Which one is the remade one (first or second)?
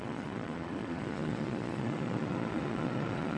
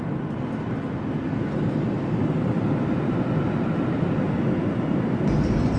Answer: first